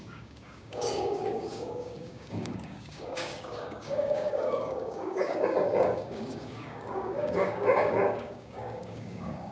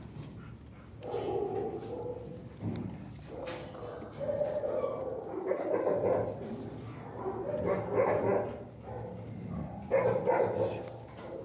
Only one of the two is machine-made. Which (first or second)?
first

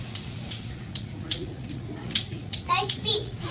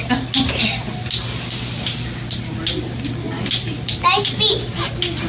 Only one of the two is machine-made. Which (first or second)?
first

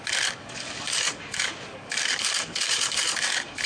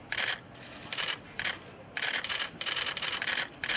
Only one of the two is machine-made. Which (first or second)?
first